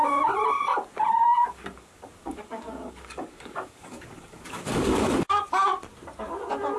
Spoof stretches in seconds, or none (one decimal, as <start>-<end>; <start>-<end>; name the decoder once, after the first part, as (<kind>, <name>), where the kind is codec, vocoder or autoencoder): 1.3-5.4 (codec, DAC)